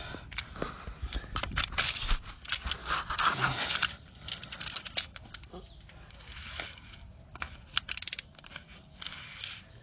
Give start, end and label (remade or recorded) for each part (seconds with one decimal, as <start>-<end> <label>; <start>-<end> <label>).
0.0-9.8 recorded